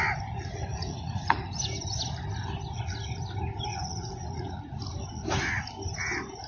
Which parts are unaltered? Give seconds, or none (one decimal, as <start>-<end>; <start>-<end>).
0.0-0.7; 1.5-3.7; 4.6-6.5